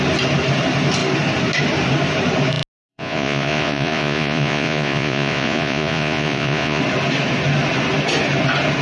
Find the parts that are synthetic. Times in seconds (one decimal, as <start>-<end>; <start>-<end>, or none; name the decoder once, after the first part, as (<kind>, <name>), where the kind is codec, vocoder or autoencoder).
2.9-6.8 (vocoder, Vocos)